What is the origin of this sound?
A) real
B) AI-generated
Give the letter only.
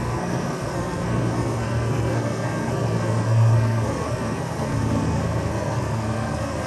B